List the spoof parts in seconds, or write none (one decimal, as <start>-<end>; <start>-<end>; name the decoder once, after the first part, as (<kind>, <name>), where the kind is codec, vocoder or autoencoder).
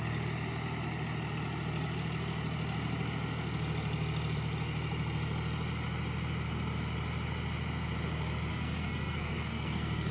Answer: 8.5-10.1 (codec, SNAC)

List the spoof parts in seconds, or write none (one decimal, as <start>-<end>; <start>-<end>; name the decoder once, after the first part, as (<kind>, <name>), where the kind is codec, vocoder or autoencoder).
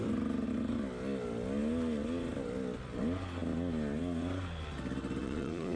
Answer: 5.2-5.8 (vocoder, Vocos)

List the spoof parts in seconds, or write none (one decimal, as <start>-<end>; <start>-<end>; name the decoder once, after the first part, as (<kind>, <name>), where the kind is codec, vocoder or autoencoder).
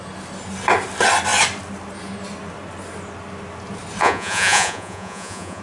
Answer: 4.0-5.6 (vocoder, Vocos)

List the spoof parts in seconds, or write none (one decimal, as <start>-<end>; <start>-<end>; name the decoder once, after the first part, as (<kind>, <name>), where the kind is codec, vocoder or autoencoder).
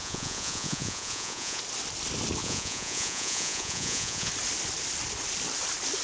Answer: 0.0-1.6 (vocoder, Vocos); 2.4-4.3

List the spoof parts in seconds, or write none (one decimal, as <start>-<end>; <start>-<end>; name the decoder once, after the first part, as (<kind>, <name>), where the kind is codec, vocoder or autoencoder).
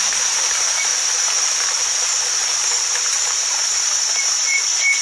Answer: 0.0-0.9 (vocoder, BigVGAN v2); 1.8-2.4; 3.1-5.0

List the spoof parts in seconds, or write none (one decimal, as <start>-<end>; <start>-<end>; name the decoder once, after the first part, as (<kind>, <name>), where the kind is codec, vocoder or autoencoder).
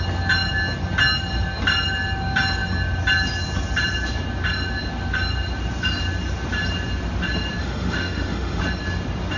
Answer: 7.6-8.6 (autoencoder, DAC-VAE)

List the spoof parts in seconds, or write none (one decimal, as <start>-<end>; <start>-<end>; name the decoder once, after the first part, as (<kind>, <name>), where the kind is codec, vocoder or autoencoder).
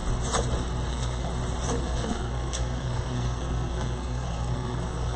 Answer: 0.9-1.3 (codec, SNAC); 1.8-5.2